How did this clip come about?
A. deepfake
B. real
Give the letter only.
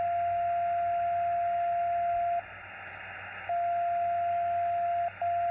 B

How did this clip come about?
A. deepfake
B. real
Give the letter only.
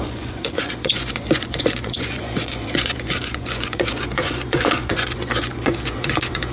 A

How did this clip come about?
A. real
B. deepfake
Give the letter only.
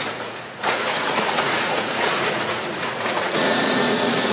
B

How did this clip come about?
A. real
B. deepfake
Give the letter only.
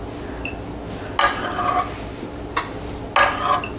A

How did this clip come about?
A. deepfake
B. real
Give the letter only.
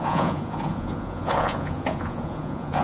A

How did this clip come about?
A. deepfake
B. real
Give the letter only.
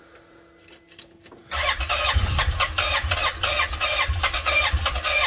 B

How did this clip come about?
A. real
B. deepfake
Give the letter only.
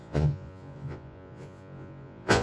B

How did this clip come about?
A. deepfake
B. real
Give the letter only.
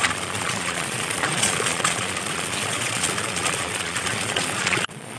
A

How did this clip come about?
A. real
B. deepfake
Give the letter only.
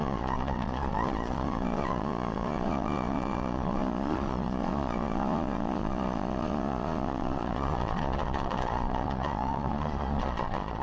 B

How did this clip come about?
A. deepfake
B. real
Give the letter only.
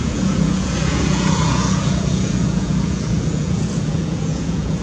A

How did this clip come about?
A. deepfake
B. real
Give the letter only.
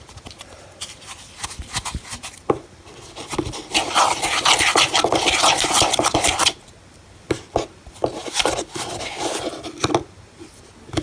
B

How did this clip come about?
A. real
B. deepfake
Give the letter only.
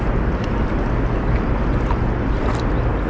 A